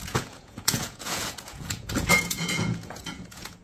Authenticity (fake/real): fake